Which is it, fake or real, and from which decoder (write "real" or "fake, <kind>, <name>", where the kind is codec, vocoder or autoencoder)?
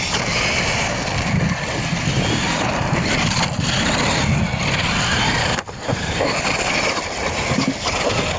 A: real